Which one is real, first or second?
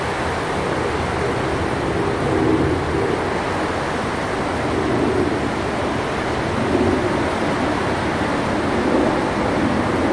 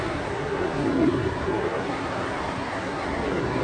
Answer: first